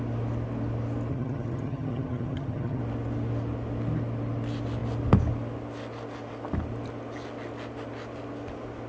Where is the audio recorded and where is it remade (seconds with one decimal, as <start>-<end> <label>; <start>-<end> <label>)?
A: 0.0-1.1 recorded; 1.1-2.8 remade; 2.8-8.9 recorded